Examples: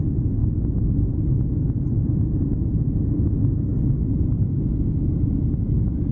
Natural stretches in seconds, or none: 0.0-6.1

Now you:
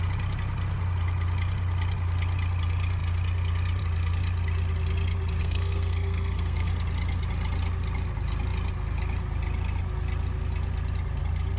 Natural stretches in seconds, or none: 0.0-5.4; 6.7-11.6

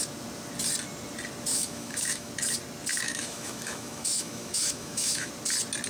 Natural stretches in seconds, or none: 0.0-1.5; 2.3-2.9; 5.3-5.9

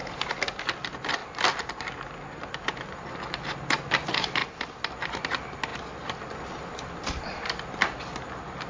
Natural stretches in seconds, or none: 0.0-8.7

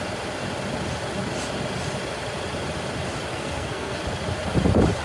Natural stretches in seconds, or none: 0.0-3.3; 4.0-5.0

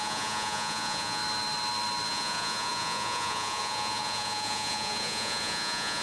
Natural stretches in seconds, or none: 1.2-2.1

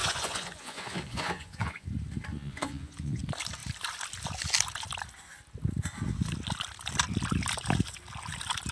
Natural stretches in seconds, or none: 1.9-2.3; 3.2-8.7

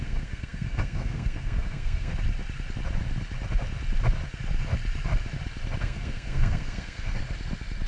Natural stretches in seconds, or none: 2.1-5.8; 7.2-7.9